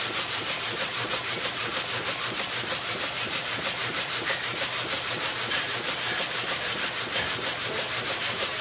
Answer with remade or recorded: remade